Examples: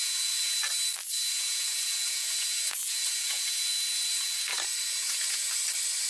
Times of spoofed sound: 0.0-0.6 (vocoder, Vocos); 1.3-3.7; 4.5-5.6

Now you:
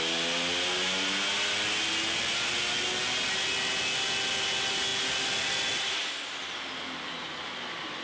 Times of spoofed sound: none

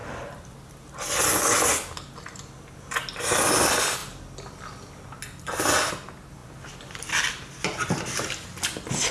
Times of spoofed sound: none